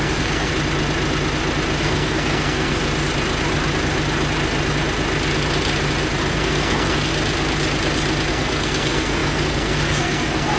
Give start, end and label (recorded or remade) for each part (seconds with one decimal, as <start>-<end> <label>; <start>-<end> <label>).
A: 0.0-0.5 remade; 0.5-1.8 recorded; 1.8-2.8 remade; 2.8-6.3 recorded; 6.3-7.1 remade; 7.1-8.3 recorded; 8.3-10.6 remade